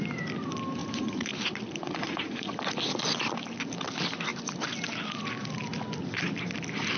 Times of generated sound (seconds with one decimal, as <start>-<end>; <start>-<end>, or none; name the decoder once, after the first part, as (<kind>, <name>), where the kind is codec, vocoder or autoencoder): 0.8-1.3 (vocoder, Vocos); 1.8-2.6